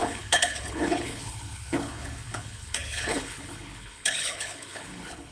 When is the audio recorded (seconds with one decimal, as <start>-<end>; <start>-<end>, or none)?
none